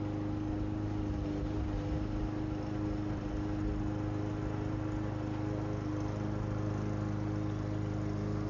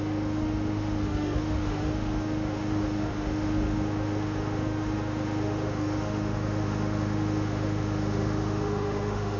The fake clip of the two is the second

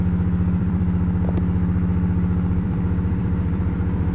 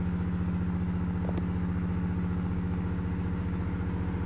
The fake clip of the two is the first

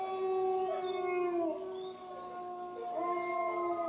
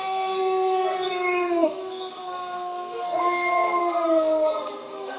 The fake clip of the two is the second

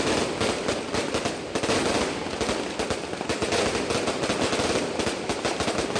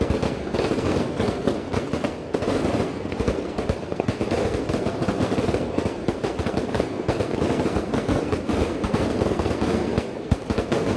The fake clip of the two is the second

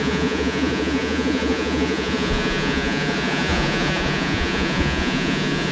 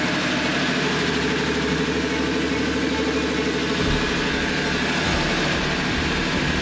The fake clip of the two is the first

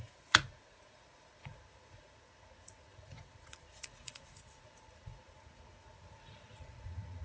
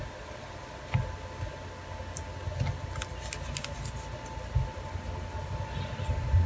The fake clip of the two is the first